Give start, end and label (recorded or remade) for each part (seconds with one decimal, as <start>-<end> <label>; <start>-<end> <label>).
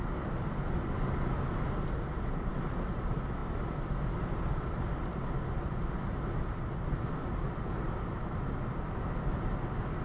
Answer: 0.0-10.0 recorded